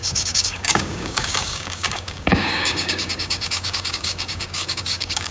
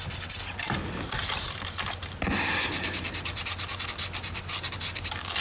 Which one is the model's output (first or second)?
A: first